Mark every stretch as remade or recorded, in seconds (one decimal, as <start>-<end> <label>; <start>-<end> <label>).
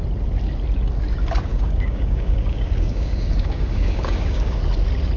0.0-1.5 recorded; 1.5-4.6 remade; 4.6-5.2 recorded